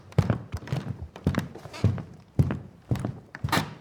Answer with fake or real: fake